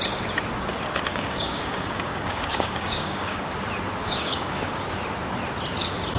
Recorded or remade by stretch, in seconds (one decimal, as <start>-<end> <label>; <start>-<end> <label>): 0.0-1.1 recorded; 1.1-3.5 remade; 3.5-4.0 recorded; 4.0-4.6 remade; 4.6-6.2 recorded